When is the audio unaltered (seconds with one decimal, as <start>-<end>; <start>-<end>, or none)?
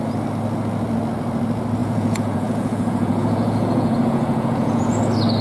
0.0-1.8; 5.0-5.4